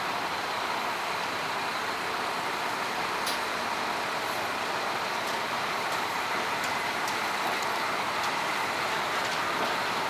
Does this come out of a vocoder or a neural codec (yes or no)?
yes